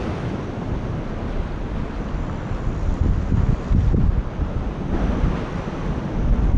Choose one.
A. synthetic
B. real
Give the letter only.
B